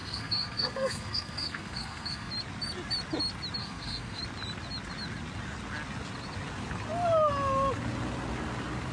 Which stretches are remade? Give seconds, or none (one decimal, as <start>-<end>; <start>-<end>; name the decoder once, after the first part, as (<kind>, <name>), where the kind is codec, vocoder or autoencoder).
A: 0.0-2.3 (codec, SNAC); 3.6-4.2